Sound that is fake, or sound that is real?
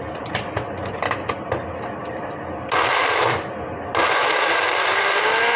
real